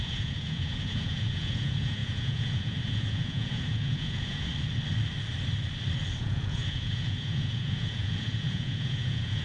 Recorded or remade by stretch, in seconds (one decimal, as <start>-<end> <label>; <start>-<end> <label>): 0.0-4.5 remade; 4.5-6.2 recorded; 6.2-9.4 remade